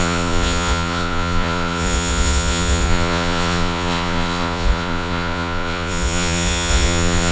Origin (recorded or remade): remade